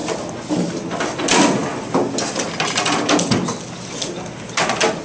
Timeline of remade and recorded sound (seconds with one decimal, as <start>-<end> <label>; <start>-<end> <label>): 0.0-5.0 recorded